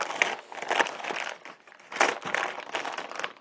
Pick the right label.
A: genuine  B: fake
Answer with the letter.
A